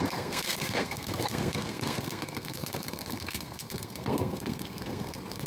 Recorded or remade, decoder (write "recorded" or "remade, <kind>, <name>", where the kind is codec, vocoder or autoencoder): remade, codec, SNAC